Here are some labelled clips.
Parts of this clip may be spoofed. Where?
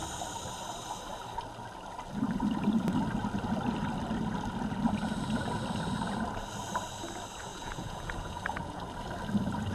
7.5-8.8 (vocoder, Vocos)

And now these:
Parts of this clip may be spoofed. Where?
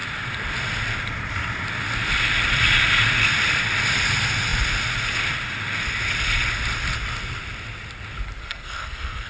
8.4-9.3 (codec, SNAC)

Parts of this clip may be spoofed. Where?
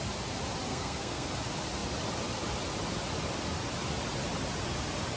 0.7-1.3 (codec, SNAC)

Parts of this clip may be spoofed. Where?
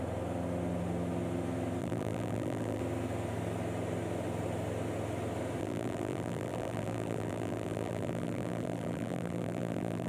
1.8-2.8 (vocoder, BigVGAN v2); 5.6-10.1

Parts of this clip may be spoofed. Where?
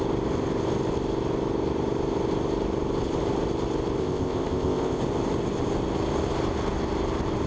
4.0-5.0 (codec, ZipCodec)